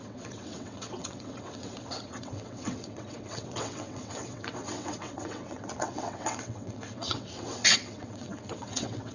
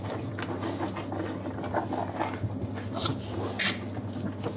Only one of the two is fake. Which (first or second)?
first